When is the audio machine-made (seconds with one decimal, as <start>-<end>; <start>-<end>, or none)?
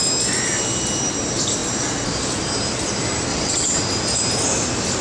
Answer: 3.3-3.8